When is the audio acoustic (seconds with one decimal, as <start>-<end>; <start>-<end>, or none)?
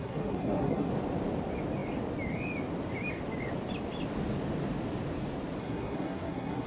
0.9-5.6